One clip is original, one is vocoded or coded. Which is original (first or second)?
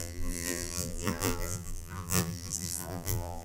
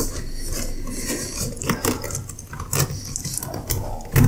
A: second